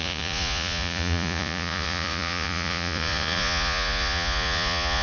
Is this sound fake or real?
fake